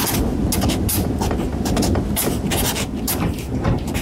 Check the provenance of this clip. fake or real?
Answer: real